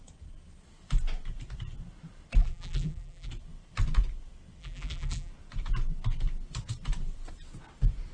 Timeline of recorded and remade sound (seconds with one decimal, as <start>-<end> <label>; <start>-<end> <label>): 0.0-2.4 recorded; 2.4-3.3 remade; 3.3-4.6 recorded; 4.6-5.3 remade; 5.3-8.1 recorded